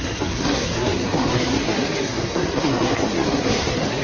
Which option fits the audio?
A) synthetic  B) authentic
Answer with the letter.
A